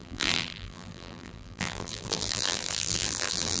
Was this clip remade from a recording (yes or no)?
yes